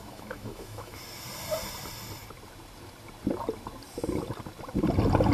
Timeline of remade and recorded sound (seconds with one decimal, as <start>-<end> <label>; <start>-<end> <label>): 0.0-1.0 remade; 1.0-5.3 recorded